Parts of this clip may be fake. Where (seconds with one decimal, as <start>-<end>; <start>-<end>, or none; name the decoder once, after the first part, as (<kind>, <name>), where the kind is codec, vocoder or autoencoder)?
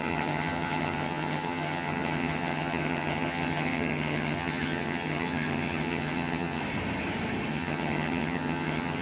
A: 0.0-6.6 (vocoder, HiFi-GAN); 7.5-9.0